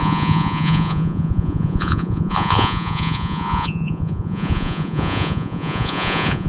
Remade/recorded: remade